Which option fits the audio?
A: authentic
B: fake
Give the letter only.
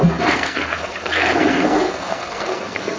B